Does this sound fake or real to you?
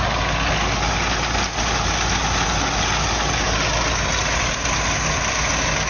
real